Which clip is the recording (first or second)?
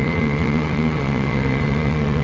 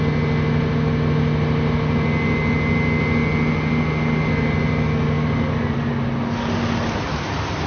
second